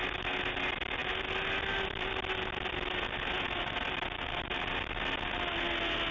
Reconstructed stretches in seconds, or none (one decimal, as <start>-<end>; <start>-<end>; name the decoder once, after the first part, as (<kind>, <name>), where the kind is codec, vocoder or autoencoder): none